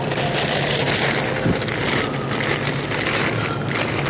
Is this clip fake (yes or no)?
no